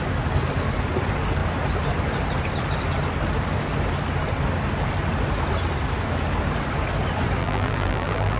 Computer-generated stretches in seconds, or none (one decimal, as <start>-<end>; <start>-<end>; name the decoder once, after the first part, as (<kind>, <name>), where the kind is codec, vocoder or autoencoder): 7.4-8.4 (vocoder, BigVGAN v2)